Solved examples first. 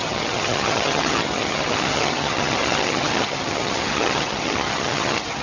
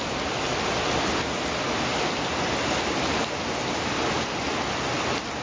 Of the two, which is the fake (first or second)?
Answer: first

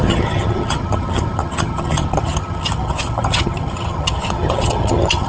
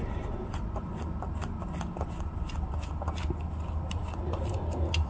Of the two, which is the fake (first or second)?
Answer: first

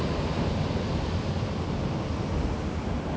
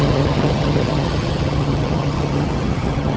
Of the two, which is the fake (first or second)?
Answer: second